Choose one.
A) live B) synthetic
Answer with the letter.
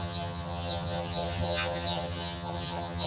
B